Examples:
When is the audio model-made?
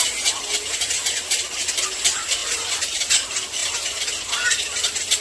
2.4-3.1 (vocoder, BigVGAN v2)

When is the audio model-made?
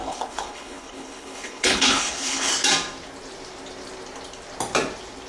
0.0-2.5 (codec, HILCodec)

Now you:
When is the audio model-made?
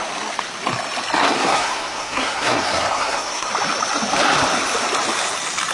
1.2-3.5 (codec, SNAC)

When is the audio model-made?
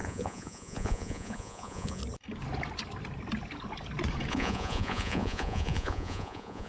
0.0-2.0 (vocoder, Vocos); 4.3-6.7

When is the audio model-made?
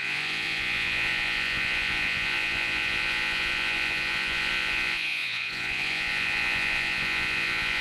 0.0-7.8 (vocoder, Vocos)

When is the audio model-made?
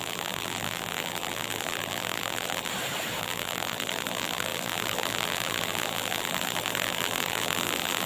0.0-2.7 (vocoder, BigVGAN v2); 3.2-8.1